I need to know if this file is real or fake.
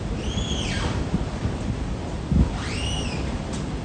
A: fake